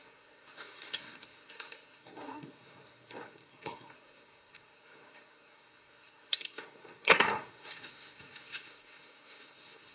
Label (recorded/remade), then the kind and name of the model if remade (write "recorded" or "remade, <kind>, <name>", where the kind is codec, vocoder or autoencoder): remade, codec, SNAC